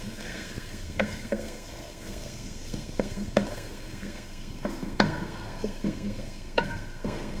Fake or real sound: fake